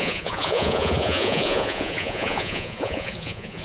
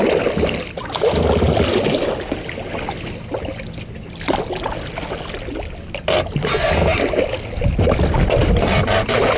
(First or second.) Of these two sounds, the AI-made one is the first